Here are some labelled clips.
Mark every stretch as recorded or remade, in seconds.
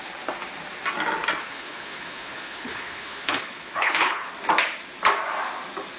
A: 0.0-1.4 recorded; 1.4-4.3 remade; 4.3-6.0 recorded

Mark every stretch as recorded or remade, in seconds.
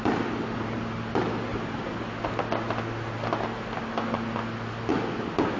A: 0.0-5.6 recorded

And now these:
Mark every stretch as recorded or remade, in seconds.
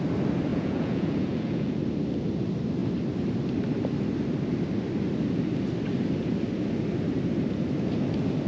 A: 0.0-0.5 recorded; 0.5-1.8 remade; 1.8-8.5 recorded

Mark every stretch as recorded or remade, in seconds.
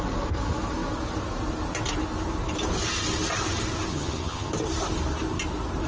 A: 0.0-3.9 recorded; 3.9-4.5 remade; 4.5-5.9 recorded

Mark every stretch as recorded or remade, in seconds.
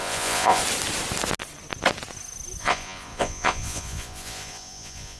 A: 0.0-0.6 remade; 0.6-2.6 recorded; 2.6-5.2 remade